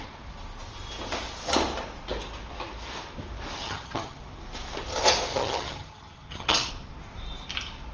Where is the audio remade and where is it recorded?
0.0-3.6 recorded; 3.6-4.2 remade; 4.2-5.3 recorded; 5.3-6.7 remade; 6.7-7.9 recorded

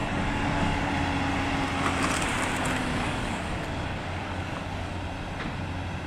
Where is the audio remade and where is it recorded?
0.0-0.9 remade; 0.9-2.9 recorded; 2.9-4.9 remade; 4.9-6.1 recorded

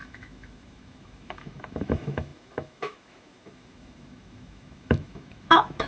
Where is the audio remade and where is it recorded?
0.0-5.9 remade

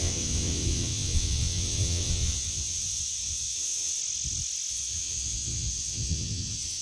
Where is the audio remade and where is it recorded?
0.0-4.0 remade; 4.0-4.7 recorded; 4.7-6.8 remade